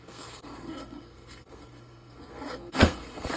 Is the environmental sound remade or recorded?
remade